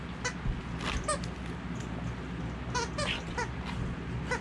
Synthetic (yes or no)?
no